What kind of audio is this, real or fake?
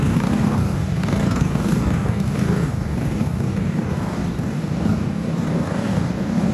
fake